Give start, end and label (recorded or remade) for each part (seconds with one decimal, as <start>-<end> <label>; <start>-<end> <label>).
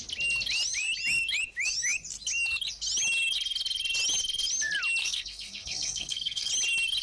0.0-5.0 recorded; 5.0-6.5 remade; 6.5-7.0 recorded